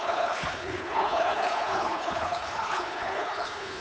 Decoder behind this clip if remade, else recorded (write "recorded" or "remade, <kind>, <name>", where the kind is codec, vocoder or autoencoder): remade, codec, HILCodec